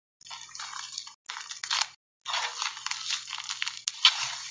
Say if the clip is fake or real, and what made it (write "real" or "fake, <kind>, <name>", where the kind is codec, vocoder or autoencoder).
real